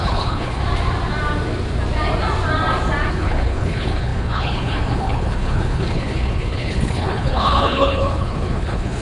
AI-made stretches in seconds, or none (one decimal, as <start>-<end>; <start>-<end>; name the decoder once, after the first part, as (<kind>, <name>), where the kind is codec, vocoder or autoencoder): 0.0-0.6 (codec, HILCodec); 3.1-9.0